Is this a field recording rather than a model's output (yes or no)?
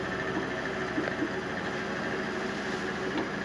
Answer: yes